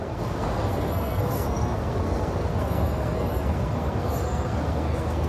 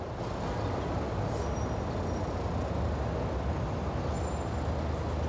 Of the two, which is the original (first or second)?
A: second